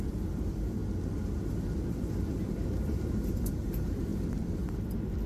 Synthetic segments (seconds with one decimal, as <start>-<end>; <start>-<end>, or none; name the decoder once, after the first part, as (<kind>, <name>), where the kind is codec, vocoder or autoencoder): 0.0-0.8 (vocoder, BigVGAN v2); 1.9-4.1; 4.7-5.3